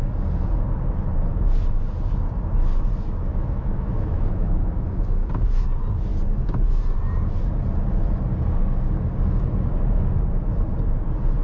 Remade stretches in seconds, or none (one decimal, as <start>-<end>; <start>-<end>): 3.3-5.3